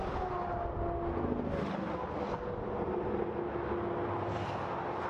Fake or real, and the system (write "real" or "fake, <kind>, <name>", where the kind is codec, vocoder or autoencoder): real